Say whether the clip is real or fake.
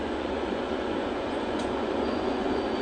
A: fake